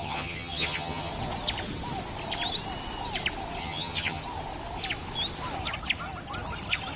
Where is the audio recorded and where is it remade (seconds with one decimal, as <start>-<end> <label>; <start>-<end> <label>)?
0.0-1.1 remade; 1.1-3.6 recorded; 3.6-4.2 remade; 4.2-7.0 recorded